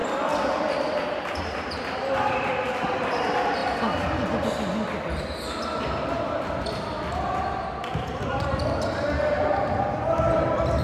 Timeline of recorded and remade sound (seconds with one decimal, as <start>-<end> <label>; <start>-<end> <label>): 0.0-3.6 remade; 3.6-8.0 recorded; 8.0-10.8 remade